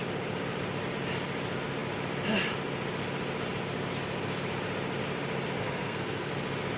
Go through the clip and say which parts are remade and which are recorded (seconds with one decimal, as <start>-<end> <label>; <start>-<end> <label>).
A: 0.0-5.6 recorded; 5.6-6.3 remade; 6.3-6.8 recorded